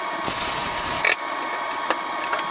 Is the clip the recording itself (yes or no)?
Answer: yes